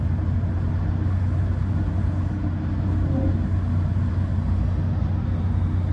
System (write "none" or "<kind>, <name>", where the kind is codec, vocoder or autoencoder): none